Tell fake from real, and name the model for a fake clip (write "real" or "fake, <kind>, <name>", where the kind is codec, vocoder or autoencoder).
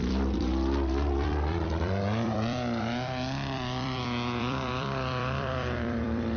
fake, vocoder, BigVGAN v2